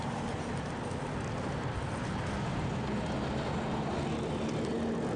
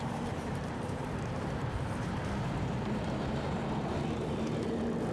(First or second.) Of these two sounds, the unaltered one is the first